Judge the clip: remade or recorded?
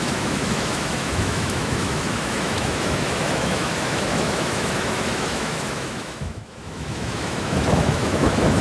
remade